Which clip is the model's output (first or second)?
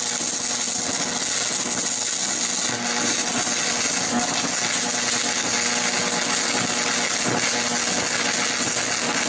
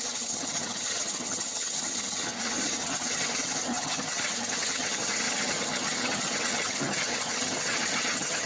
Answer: second